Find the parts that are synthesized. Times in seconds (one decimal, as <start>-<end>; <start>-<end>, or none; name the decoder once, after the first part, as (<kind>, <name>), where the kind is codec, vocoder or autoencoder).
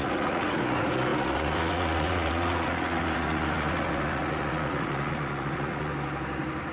0.0-5.9 (vocoder, Vocos)